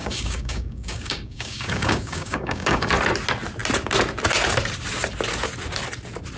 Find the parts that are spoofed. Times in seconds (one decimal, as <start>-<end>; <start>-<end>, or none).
0.0-2.9